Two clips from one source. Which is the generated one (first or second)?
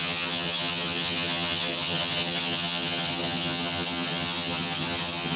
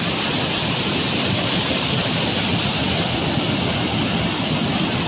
first